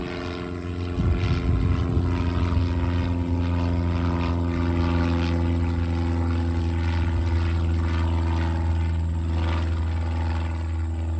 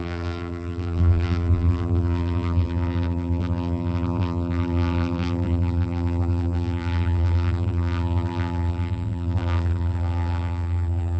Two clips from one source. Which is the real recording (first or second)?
first